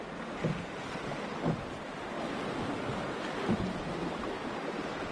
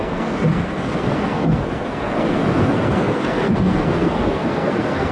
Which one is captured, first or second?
first